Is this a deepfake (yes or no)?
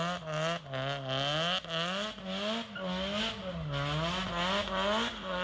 no